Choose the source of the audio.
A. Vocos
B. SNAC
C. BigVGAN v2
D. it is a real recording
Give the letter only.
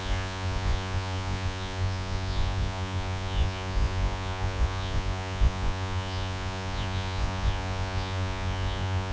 A